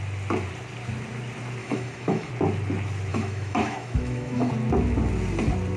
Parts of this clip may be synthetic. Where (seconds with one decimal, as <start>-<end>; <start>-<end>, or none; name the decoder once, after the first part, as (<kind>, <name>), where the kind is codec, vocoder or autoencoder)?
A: 1.6-2.3 (autoencoder, DAC-VAE); 3.1-4.5